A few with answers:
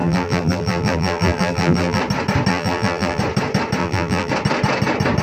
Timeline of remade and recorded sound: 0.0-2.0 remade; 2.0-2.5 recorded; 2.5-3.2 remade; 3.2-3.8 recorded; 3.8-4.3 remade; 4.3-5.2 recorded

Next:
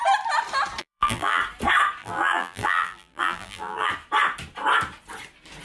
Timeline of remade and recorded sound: 0.0-0.8 recorded; 0.8-1.4 remade; 1.4-2.0 recorded; 2.0-3.9 remade; 3.9-5.6 recorded

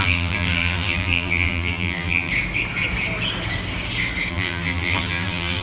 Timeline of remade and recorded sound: 0.0-2.3 remade; 2.3-4.3 recorded; 4.3-5.6 remade

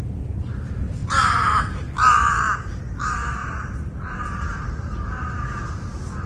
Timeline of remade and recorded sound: 0.0-1.0 recorded; 1.0-1.9 remade; 1.9-3.4 recorded; 3.4-4.2 remade; 4.2-6.3 recorded